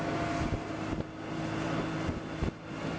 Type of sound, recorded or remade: recorded